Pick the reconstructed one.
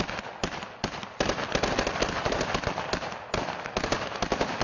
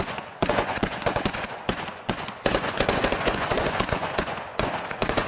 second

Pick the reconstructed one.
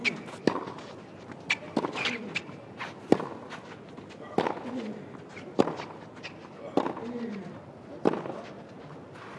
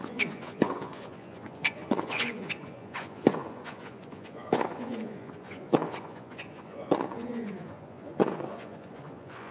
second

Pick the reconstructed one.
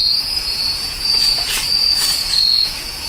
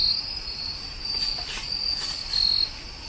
first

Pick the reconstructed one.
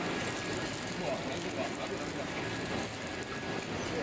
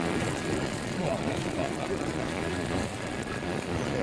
second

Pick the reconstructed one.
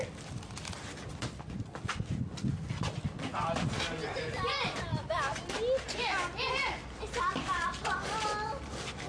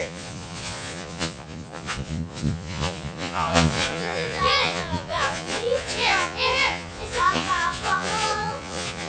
second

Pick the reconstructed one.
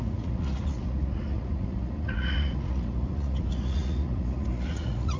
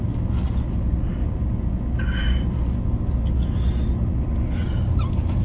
first